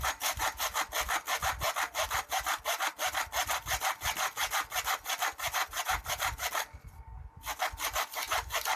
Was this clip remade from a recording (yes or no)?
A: no